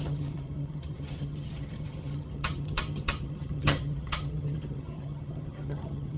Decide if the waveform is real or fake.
fake